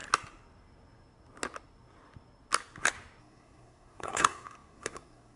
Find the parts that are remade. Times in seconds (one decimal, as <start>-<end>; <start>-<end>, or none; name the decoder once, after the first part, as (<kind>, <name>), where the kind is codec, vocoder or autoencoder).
3.2-5.4 (codec, SNAC)